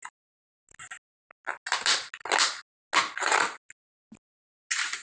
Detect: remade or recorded recorded